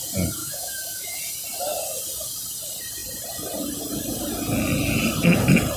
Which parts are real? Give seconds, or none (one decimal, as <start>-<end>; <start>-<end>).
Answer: 0.0-0.4; 1.2-5.8